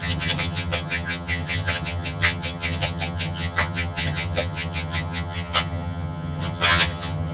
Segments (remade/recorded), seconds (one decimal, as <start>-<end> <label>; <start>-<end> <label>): 0.0-7.3 remade